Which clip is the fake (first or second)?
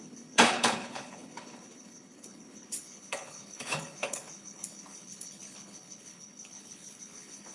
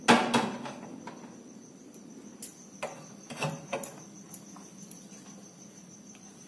first